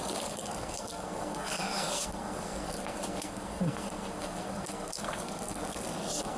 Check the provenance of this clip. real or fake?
fake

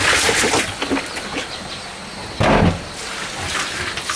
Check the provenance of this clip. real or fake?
real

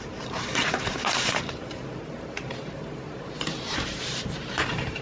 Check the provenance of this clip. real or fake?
fake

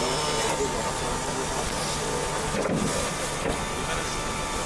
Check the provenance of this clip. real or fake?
real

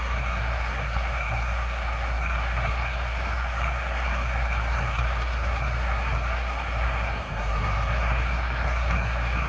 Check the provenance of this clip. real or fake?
fake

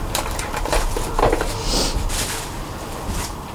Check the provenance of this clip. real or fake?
fake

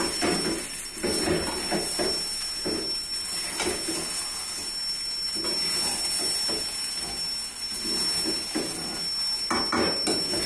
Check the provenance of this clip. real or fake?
real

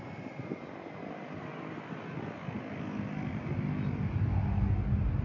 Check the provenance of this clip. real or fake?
real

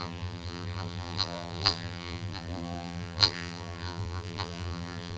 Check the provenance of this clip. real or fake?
fake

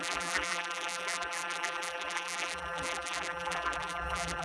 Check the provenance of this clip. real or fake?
fake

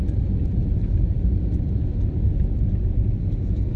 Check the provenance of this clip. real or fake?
real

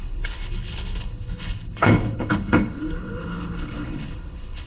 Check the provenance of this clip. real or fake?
fake